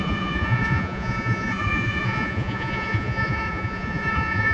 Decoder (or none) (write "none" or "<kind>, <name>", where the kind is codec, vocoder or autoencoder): vocoder, Vocos